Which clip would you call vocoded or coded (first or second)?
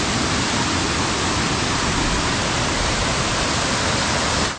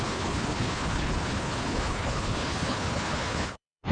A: second